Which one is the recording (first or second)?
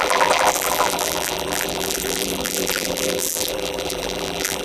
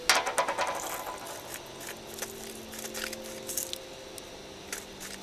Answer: second